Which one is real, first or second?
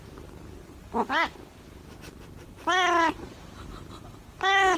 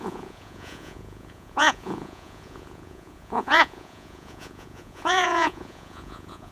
first